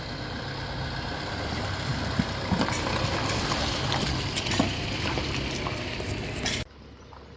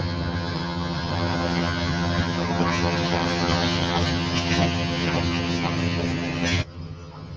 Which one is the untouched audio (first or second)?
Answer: first